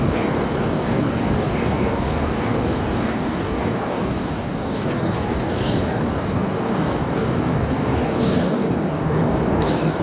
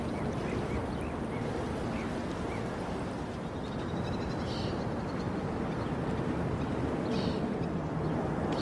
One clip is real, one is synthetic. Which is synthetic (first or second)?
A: first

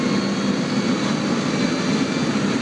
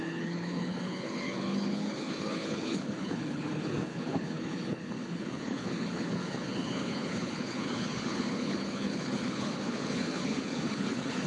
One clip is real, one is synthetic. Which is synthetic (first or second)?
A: second